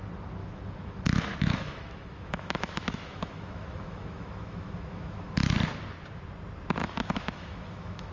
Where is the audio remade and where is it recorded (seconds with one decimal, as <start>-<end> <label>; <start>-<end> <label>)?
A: 0.0-0.4 recorded; 0.4-5.3 remade; 5.3-6.8 recorded; 6.8-8.1 remade